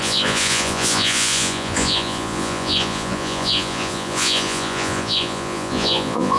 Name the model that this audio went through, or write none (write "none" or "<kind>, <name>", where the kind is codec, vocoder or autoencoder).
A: vocoder, Vocos